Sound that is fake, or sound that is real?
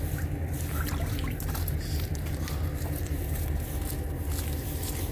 real